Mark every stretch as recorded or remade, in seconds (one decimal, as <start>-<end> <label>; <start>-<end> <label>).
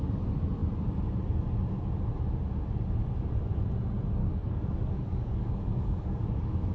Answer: 0.0-4.2 recorded; 4.2-6.7 remade